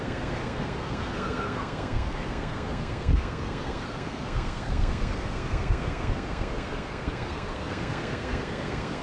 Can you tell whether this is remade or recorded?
remade